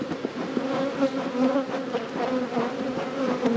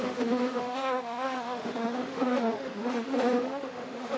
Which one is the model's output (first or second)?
second